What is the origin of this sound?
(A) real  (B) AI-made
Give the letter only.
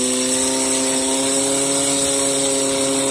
A